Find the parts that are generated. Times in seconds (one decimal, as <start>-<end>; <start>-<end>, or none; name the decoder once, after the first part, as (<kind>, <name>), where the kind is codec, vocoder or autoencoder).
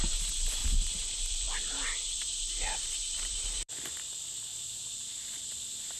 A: 0.6-3.7 (vocoder, BigVGAN v2); 4.5-5.1